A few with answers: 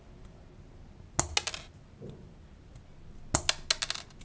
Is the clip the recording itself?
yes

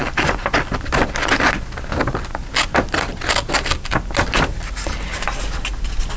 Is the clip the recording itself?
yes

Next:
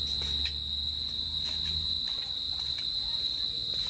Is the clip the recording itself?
yes